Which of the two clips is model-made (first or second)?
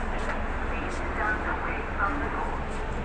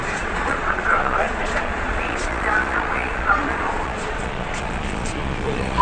second